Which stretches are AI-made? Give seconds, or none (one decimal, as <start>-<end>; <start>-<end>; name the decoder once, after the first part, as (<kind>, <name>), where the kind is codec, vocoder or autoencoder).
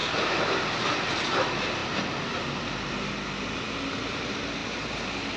0.0-1.2 (vocoder, BigVGAN v2)